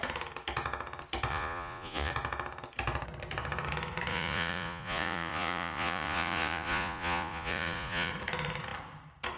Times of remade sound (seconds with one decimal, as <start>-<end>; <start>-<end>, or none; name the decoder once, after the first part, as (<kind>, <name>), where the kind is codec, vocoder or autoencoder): 1.3-2.1 (vocoder, Vocos); 4.1-8.1